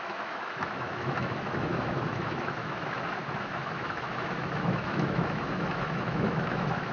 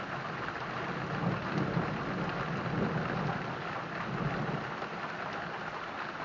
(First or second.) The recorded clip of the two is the second